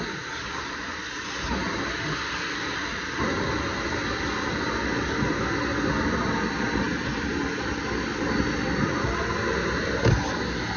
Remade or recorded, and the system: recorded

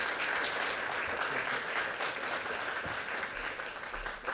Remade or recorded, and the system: recorded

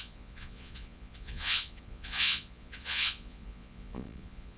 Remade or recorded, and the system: remade, vocoder, Vocos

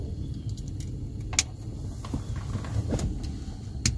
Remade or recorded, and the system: recorded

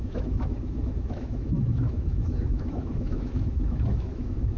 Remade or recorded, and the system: remade, autoencoder, DAC-VAE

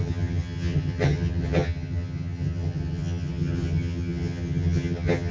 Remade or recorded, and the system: remade, vocoder, HiFi-GAN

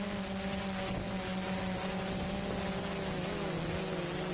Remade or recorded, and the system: recorded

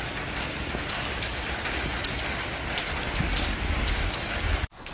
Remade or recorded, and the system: recorded